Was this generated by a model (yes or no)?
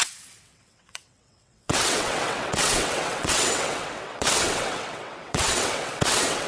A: yes